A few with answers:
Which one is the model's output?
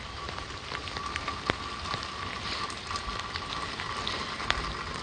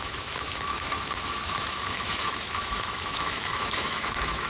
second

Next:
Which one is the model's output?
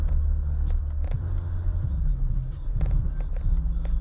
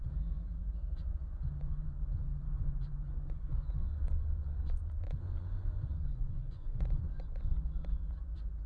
second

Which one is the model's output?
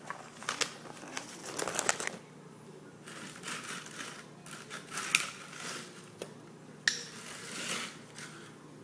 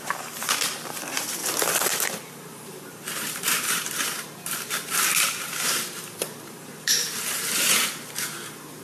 second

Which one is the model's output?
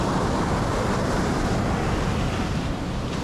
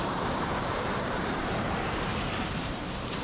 second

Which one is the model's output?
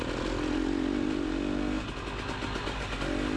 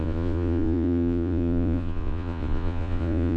second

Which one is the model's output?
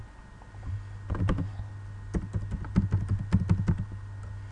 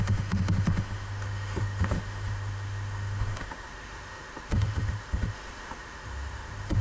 second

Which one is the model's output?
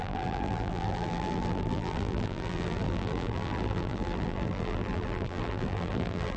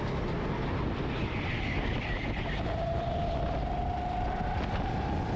first